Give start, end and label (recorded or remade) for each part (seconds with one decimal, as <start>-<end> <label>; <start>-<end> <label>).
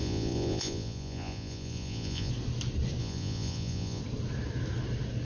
0.0-2.3 remade; 2.3-3.0 recorded; 3.0-4.0 remade; 4.0-5.2 recorded